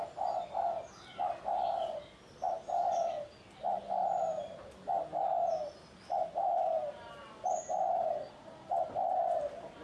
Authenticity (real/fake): real